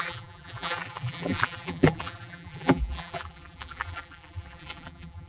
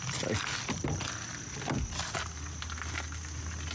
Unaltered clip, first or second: second